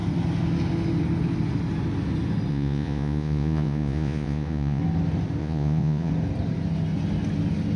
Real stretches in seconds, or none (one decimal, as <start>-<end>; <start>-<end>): 0.0-2.5; 4.8-5.4; 6.1-7.8